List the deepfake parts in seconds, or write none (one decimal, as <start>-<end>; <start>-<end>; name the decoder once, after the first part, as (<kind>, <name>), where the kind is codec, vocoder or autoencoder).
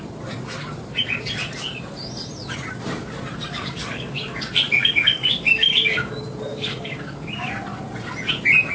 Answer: 3.5-4.2 (codec, DAC); 4.8-6.1; 6.5-7.5